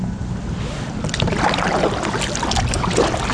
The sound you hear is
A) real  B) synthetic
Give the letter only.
A